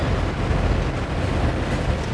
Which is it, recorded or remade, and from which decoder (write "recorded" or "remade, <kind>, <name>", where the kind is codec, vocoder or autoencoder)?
recorded